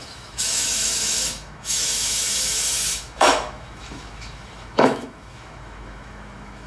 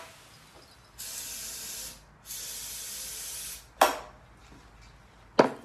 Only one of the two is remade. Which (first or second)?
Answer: first